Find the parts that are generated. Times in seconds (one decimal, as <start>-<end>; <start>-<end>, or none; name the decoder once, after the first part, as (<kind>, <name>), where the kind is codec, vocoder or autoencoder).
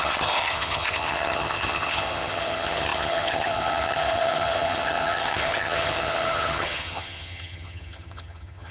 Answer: 0.0-8.7 (vocoder, HiFi-GAN)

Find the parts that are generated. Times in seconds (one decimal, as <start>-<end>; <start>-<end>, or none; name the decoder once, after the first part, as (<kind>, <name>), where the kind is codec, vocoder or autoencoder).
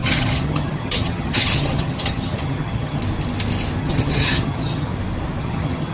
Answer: 0.0-3.0 (vocoder, HiFi-GAN); 3.8-4.9; 5.4-5.9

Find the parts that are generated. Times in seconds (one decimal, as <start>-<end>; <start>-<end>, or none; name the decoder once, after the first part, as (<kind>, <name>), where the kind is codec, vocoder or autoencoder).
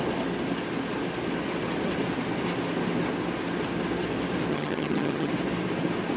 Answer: 4.5-5.3 (vocoder, HiFi-GAN)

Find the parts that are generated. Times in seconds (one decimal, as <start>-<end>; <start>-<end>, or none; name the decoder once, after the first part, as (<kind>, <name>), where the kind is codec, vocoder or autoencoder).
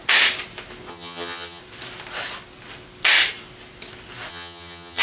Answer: 0.9-1.6 (vocoder, HiFi-GAN); 4.3-5.0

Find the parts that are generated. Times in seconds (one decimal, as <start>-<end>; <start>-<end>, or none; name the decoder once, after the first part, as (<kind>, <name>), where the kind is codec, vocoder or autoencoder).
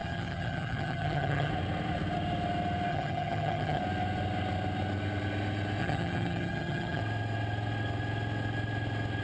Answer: 0.0-1.5 (vocoder, HiFi-GAN); 2.9-3.8; 5.8-7.0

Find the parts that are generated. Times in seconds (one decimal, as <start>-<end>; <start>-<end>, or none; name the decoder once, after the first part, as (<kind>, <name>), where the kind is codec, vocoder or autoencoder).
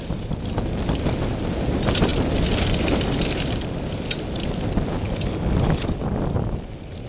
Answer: none